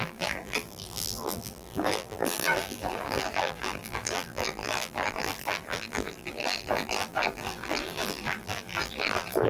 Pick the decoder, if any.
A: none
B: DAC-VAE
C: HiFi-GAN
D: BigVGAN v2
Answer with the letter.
D